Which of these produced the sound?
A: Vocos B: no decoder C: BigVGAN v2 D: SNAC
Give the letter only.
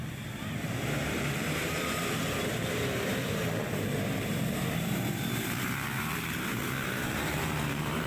C